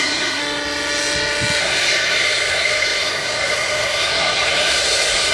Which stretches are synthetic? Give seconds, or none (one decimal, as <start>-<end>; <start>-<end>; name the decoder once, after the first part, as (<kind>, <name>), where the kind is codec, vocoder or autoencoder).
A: 0.0-0.4 (codec, SNAC); 1.6-5.3